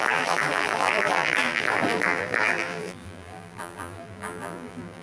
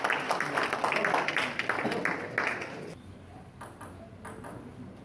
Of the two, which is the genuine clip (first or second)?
second